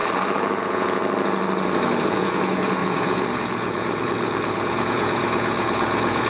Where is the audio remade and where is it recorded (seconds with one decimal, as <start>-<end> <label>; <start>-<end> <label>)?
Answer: 0.0-0.6 recorded; 0.6-1.0 remade; 1.0-2.0 recorded; 2.0-6.3 remade